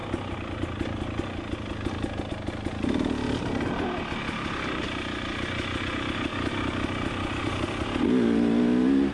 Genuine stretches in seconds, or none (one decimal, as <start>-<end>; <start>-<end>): 0.0-9.1